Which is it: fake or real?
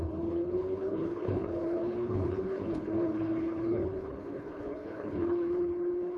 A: fake